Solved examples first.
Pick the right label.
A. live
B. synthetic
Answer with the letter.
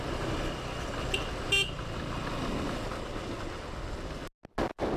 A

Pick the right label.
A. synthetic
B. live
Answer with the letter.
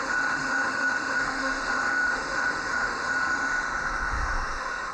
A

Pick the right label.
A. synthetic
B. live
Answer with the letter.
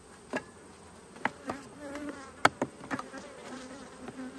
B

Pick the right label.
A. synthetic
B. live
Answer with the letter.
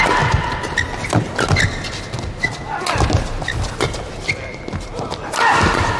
B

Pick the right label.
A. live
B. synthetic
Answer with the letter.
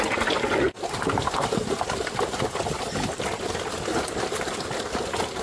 A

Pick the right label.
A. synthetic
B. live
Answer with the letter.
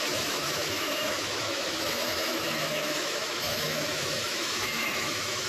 A